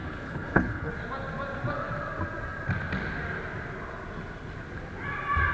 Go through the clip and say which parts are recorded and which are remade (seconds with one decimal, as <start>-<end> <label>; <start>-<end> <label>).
0.0-0.9 remade; 0.9-5.5 recorded